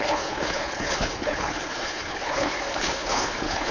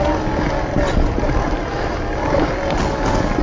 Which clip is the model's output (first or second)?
first